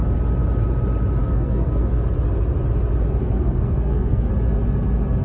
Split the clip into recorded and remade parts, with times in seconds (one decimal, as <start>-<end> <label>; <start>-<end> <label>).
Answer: 0.0-1.2 recorded; 1.2-1.9 remade; 1.9-3.2 recorded; 3.2-4.3 remade; 4.3-5.2 recorded